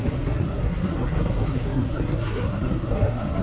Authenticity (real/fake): fake